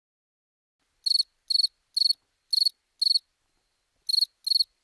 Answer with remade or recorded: recorded